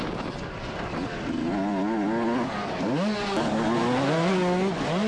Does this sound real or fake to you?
real